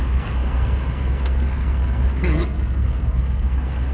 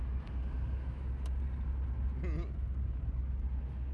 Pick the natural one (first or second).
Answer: second